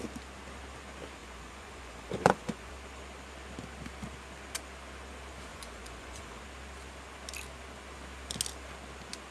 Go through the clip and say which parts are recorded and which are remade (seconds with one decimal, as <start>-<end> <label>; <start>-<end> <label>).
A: 0.0-1.2 recorded; 1.2-2.7 remade; 2.7-5.5 recorded; 5.5-6.4 remade; 6.4-9.3 recorded